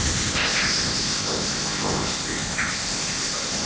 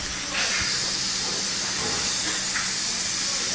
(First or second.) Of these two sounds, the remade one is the first